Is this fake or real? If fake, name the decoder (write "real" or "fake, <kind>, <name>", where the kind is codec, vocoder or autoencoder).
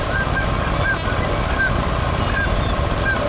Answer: real